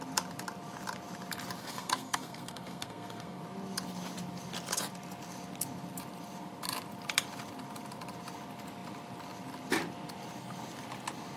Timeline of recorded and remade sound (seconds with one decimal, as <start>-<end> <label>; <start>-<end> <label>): 0.0-1.6 recorded; 1.6-3.4 remade; 3.4-11.4 recorded